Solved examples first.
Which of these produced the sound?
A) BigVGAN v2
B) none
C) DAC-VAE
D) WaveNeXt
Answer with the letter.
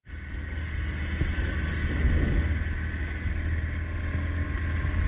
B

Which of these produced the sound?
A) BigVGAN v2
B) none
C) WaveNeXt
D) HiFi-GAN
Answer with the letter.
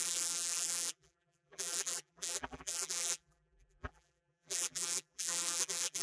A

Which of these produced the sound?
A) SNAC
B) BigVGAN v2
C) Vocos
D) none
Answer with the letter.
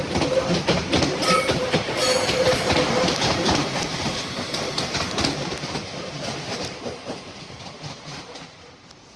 B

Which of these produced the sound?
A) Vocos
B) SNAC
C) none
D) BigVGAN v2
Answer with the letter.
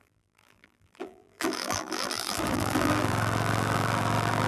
D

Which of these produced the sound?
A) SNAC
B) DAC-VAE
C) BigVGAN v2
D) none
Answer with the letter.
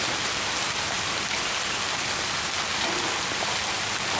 D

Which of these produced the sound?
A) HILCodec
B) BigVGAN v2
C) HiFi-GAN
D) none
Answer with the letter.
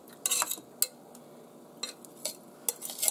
D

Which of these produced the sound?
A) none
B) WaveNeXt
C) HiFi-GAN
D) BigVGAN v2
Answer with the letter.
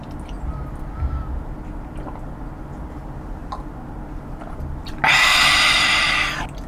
A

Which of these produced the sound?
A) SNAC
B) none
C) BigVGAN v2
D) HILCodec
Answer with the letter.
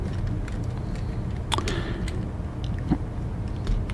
B